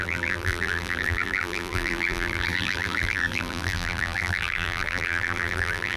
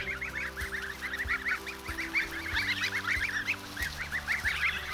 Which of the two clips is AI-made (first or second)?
first